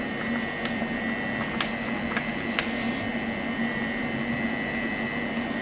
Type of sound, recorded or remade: recorded